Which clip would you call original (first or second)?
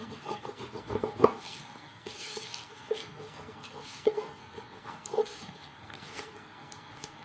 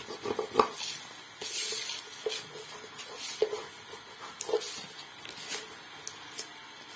second